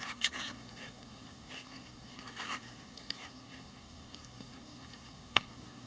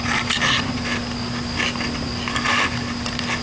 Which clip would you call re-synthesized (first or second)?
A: first